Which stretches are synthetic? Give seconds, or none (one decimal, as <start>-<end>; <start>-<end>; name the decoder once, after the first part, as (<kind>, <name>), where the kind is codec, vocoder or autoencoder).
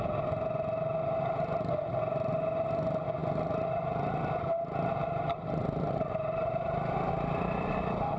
3.2-7.1 (vocoder, BigVGAN v2)